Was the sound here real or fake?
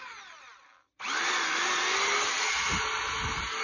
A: real